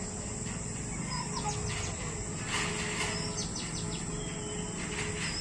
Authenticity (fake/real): real